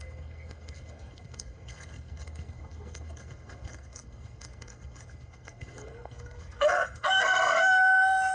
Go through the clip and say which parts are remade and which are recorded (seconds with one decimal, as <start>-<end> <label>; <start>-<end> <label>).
0.0-8.3 remade